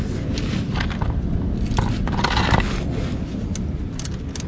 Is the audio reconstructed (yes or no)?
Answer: no